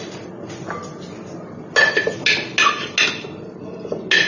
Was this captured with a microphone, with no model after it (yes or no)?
yes